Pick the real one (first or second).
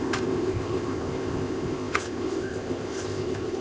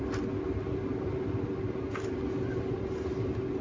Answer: second